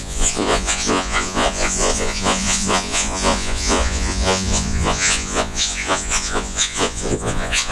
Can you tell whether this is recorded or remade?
remade